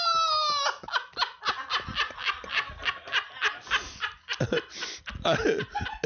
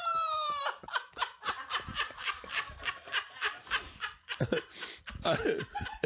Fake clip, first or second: second